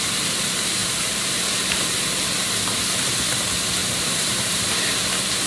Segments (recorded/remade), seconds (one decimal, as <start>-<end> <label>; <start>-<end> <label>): 0.0-0.8 recorded; 0.8-1.4 remade; 1.4-3.8 recorded; 3.8-4.7 remade; 4.7-5.5 recorded